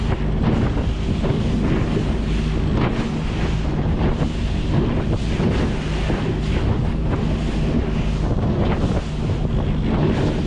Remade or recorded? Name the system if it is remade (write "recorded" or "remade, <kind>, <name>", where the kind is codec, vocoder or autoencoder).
recorded